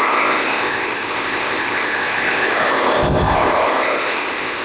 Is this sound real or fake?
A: fake